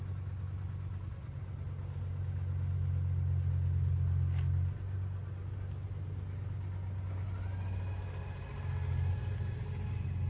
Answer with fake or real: real